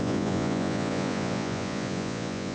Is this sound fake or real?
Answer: fake